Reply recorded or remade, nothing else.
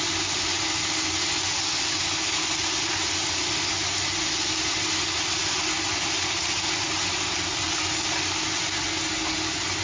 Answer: recorded